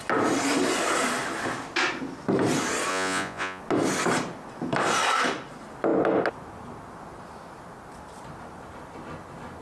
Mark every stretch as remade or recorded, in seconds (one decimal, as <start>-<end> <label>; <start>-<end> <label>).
0.0-2.9 recorded; 2.9-3.6 remade; 3.6-9.6 recorded